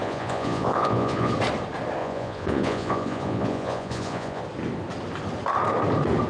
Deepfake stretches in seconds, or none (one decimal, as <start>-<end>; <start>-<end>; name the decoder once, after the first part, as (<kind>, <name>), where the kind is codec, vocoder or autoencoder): 0.0-1.3 (vocoder, Vocos); 2.0-4.4